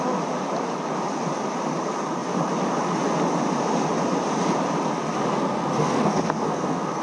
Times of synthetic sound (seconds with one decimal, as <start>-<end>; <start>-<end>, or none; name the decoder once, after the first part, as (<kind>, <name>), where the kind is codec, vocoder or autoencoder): 5.3-7.0 (codec, SNAC)